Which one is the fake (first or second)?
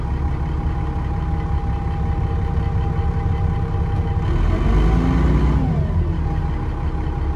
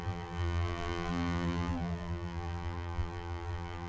second